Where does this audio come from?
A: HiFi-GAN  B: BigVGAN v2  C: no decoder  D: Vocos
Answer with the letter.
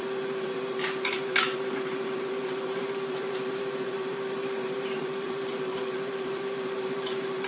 B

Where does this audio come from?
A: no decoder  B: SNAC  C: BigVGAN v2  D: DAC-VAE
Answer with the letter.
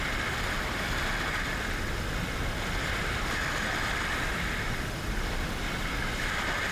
A